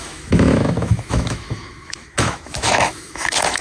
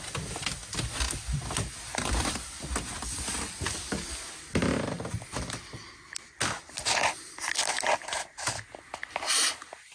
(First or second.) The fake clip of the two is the first